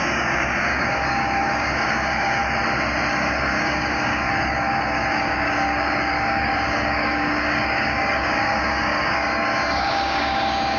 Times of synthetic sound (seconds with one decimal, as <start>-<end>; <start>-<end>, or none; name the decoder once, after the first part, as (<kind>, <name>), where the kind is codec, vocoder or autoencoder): 0.0-2.4 (codec, DAC); 3.1-10.8